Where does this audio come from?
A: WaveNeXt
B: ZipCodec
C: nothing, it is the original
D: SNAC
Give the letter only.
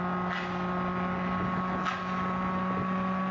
C